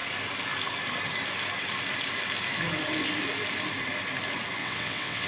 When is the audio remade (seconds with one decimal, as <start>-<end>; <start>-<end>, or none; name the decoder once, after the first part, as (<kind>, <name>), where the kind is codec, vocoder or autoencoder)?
4.6-5.3 (vocoder, WaveNeXt)